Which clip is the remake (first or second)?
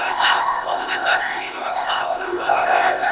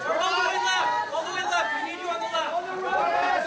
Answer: first